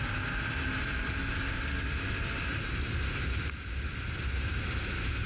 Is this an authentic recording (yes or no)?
no